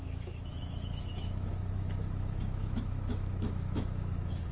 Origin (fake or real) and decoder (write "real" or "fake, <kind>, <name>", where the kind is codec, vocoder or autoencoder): fake, autoencoder, DAC-VAE